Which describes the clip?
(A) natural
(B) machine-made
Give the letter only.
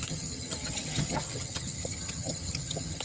B